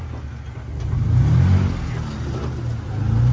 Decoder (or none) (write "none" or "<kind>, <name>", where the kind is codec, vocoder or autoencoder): none